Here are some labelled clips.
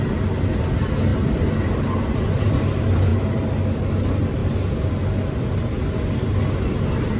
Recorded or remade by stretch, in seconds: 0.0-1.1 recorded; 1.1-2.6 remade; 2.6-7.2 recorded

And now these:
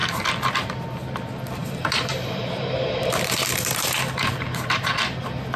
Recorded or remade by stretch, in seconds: 0.0-1.6 recorded; 1.6-5.0 remade; 5.0-5.6 recorded

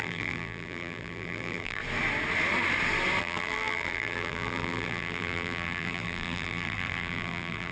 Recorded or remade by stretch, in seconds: 0.0-1.8 remade; 1.8-3.2 recorded; 3.2-7.7 remade